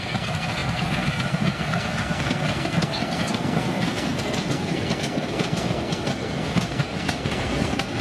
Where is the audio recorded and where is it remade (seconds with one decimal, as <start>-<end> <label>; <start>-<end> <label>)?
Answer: 0.0-8.0 remade